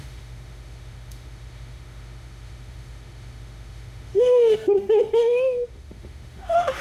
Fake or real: fake